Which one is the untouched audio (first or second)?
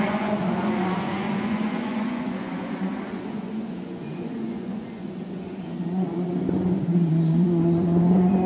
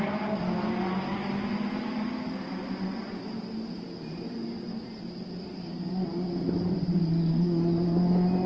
second